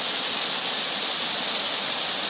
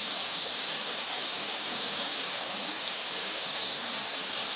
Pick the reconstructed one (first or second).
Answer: second